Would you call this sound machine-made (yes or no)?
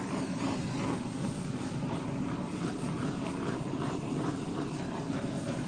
no